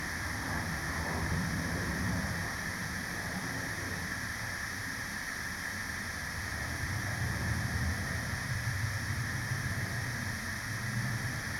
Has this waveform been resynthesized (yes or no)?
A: no